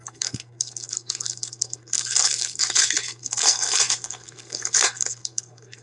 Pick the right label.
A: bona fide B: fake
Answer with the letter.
B